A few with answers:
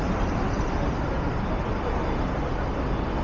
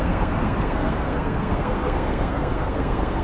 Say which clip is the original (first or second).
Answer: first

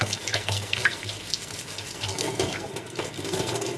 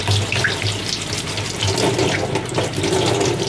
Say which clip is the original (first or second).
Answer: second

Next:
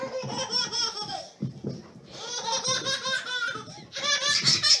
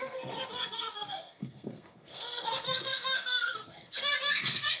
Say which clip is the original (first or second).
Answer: first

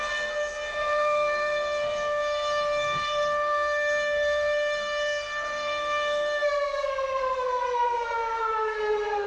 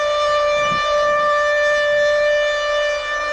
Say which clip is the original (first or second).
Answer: second